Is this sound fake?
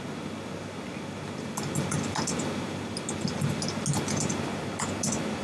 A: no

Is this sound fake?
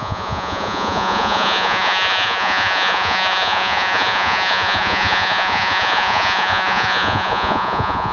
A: yes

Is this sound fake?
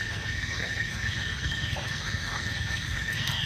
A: yes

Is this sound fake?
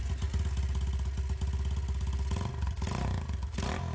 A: no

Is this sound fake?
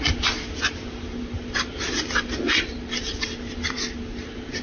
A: yes